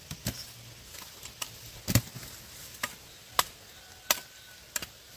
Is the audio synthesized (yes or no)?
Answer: no